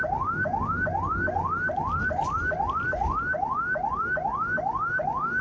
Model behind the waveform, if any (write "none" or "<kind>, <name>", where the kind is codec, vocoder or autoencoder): none